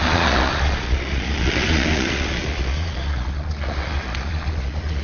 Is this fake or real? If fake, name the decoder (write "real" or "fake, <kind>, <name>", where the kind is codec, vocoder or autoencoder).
fake, vocoder, Vocos